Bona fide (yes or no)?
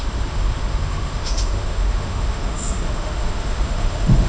no